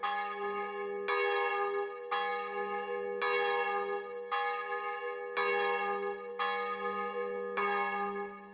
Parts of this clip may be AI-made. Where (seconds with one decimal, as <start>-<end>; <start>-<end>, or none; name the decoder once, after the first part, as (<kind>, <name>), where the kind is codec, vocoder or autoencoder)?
none